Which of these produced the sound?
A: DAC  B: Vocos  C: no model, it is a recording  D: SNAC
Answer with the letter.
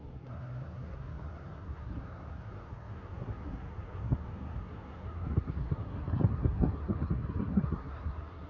D